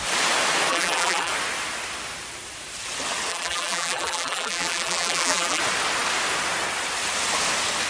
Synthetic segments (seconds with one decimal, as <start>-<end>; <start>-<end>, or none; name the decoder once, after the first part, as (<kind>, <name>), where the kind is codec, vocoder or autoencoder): 0.7-1.3 (vocoder, BigVGAN v2); 3.3-5.6